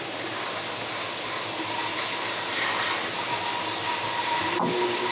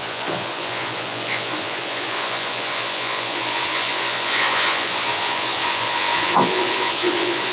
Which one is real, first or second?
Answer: first